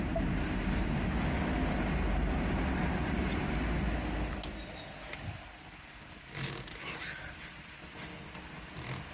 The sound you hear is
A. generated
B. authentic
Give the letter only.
B